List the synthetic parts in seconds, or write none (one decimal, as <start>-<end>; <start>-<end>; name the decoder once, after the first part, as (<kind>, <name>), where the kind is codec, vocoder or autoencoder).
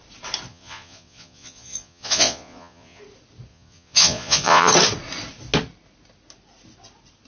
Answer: 0.5-3.0 (vocoder, Vocos); 3.5-4.7